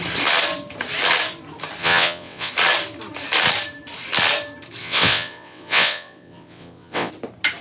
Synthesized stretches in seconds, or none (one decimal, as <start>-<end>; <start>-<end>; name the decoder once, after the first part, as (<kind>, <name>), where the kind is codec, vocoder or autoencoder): 1.8-2.5 (vocoder, WaveNeXt); 4.8-7.1